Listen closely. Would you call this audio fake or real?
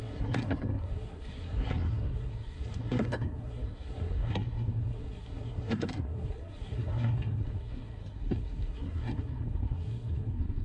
fake